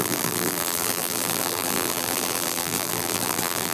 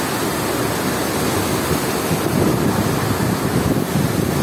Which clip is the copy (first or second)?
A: first